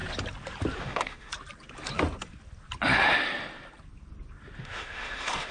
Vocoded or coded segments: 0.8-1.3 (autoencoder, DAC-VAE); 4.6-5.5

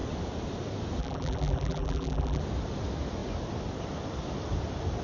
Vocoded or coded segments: 1.0-2.4 (vocoder, BigVGAN v2)

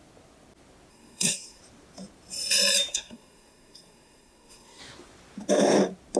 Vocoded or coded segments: 0.9-1.6 (codec, SNAC); 2.9-4.8